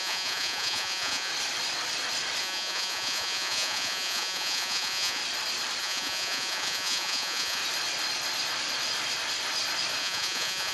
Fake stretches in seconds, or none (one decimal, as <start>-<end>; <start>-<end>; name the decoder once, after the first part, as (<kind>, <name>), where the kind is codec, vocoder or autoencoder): 0.0-1.3 (vocoder, Vocos); 2.4-5.2; 5.8-7.6; 10.0-10.7